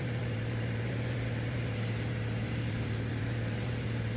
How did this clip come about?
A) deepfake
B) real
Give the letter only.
A